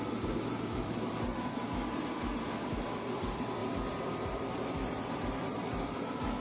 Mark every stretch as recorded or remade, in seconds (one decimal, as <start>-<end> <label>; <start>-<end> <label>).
0.0-6.4 remade